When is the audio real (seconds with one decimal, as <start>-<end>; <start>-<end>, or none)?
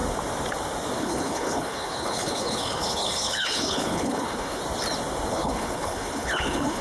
0.0-1.0; 4.6-5.3